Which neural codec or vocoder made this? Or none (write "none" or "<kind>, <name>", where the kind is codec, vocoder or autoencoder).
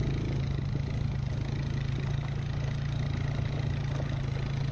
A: none